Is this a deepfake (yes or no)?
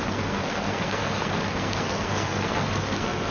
yes